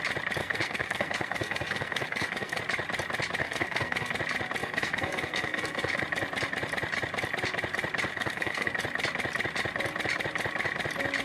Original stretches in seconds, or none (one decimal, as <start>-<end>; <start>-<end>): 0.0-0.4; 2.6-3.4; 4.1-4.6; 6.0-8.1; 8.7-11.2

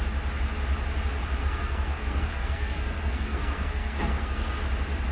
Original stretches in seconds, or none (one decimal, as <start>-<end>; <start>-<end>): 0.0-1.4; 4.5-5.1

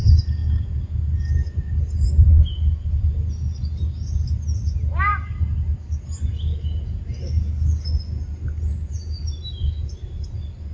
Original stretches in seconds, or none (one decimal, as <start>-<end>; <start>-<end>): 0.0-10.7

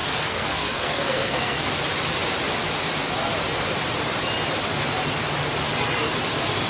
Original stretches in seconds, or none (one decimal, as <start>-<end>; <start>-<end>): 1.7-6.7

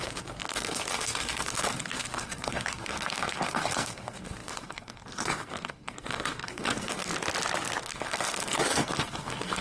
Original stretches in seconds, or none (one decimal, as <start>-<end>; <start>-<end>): 7.1-7.8